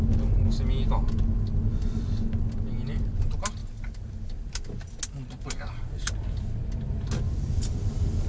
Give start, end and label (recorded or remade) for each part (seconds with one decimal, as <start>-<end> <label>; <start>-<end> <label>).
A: 0.0-8.3 recorded